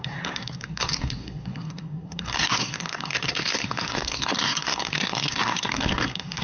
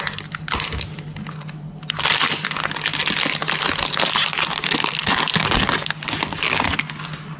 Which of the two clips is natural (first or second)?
second